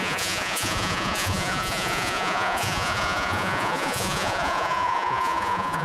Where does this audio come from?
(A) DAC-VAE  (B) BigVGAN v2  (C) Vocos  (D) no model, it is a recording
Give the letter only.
C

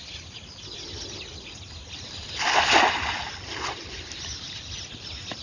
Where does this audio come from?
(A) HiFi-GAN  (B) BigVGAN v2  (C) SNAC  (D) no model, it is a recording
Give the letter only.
D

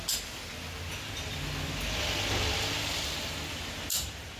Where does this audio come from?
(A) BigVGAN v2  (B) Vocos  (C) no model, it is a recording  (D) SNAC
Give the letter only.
C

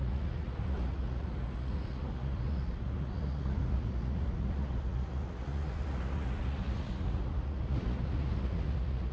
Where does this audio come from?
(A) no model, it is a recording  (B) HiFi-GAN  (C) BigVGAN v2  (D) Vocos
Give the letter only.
D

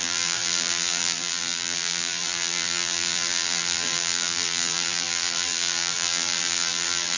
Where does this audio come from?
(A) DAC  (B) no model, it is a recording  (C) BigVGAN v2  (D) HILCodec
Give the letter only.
C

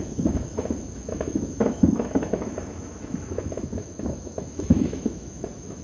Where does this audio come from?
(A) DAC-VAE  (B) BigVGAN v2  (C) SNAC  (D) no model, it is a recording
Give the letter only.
A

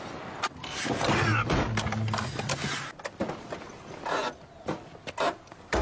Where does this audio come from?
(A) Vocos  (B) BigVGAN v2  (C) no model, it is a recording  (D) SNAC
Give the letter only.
C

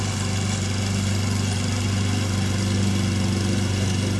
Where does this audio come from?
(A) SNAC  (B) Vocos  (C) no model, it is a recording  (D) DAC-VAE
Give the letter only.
C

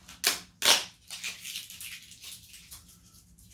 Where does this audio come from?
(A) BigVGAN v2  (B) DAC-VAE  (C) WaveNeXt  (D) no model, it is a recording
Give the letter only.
D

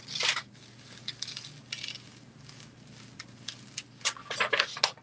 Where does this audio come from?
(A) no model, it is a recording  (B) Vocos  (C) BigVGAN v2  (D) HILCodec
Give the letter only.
A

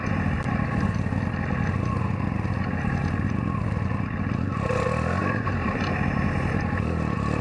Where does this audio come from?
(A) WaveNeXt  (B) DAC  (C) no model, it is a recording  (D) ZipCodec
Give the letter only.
C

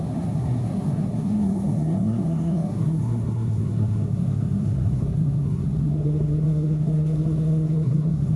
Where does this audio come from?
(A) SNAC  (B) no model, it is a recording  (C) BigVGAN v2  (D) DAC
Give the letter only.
A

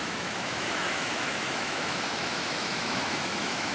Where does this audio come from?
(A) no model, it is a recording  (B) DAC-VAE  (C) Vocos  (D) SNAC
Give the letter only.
B